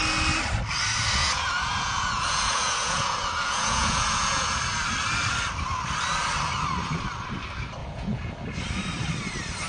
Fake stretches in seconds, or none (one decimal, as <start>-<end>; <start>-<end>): 1.2-4.6; 7.8-8.3